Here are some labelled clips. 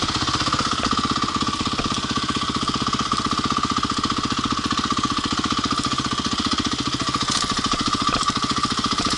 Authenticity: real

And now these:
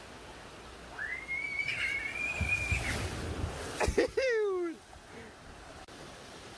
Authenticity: real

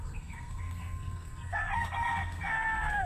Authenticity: fake